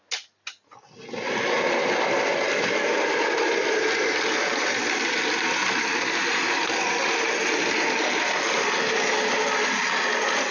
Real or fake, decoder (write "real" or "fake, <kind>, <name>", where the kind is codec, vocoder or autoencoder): real